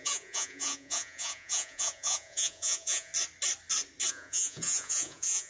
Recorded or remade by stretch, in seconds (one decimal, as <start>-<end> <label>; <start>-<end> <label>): 0.0-3.1 remade; 3.1-4.1 recorded; 4.1-5.5 remade